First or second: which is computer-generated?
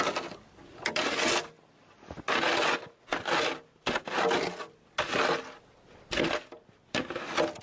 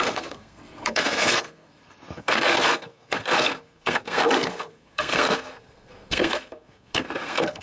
second